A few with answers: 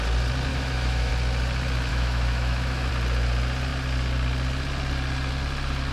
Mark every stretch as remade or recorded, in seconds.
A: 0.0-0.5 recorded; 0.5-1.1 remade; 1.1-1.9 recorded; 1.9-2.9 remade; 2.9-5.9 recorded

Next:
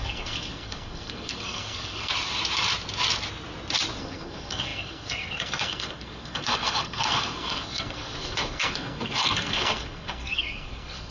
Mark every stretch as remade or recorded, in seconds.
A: 0.0-2.1 remade; 2.1-4.0 recorded; 4.0-11.1 remade

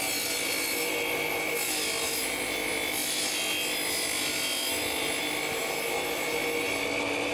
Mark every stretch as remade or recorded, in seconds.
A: 0.0-7.3 recorded

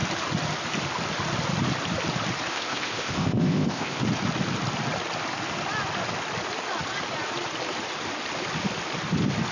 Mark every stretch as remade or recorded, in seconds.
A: 0.0-2.5 recorded; 2.5-4.0 remade; 4.0-9.5 recorded

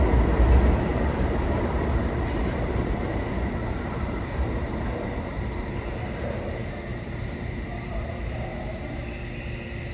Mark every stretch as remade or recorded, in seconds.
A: 0.0-0.9 recorded; 0.9-5.8 remade; 5.8-6.9 recorded; 6.9-8.7 remade; 8.7-9.9 recorded

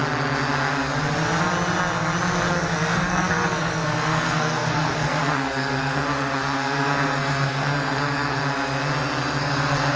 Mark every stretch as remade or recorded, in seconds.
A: 0.0-2.5 recorded; 2.5-8.4 remade; 8.4-9.4 recorded; 9.4-10.0 remade